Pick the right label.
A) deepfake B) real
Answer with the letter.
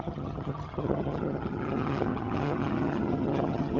A